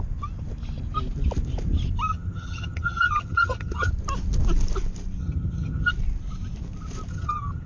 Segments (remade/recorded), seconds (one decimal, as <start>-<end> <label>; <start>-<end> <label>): 0.0-2.1 recorded; 2.1-3.9 remade; 3.9-5.2 recorded; 5.2-5.9 remade; 5.9-7.1 recorded; 7.1-7.7 remade